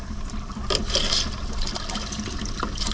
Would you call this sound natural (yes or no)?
yes